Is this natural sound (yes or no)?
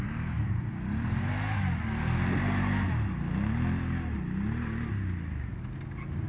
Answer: yes